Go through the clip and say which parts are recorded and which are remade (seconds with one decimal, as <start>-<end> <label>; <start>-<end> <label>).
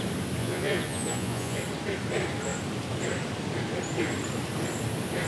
0.0-0.4 recorded; 0.4-1.6 remade; 1.6-5.3 recorded